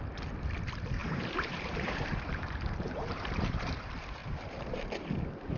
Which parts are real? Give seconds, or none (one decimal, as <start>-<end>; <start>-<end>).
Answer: 0.0-1.0; 3.8-4.2; 4.8-5.6